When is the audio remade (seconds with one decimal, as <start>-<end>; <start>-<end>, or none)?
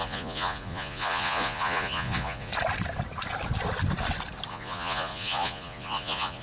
0.0-2.5; 4.5-6.4